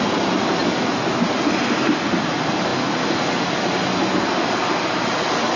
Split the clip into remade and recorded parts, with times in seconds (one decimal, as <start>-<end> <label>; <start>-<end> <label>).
0.0-5.6 recorded